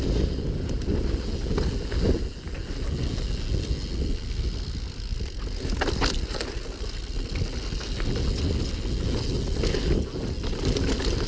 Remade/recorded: recorded